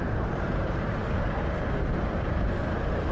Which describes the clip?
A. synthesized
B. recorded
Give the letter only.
A